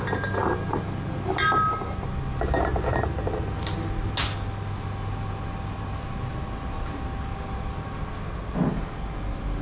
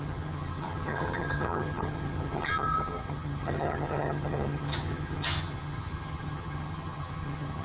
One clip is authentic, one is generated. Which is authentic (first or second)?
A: first